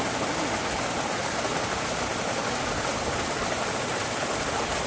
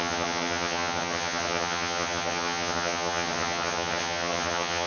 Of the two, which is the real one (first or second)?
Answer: first